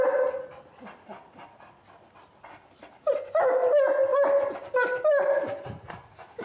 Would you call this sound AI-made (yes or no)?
no